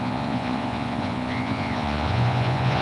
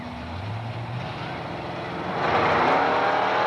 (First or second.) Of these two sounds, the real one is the second